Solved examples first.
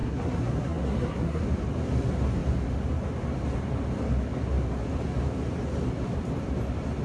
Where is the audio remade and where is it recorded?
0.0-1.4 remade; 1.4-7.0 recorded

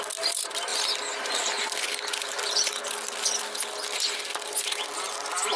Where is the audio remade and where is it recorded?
0.0-5.6 recorded

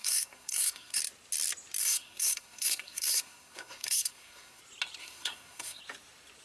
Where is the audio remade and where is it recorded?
0.0-1.0 remade; 1.0-1.8 recorded; 1.8-4.6 remade; 4.6-5.0 recorded; 5.0-5.8 remade; 5.8-6.4 recorded

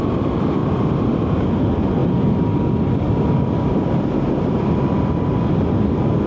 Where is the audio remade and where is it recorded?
0.0-0.6 recorded; 0.6-1.2 remade; 1.2-6.3 recorded

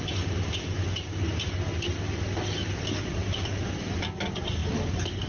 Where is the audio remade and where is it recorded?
0.0-5.3 recorded

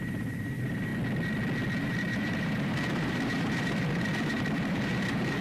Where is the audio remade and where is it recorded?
0.0-0.9 remade; 0.9-1.8 recorded; 1.8-5.4 remade